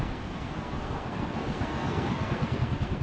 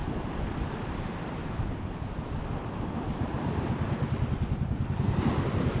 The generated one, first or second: first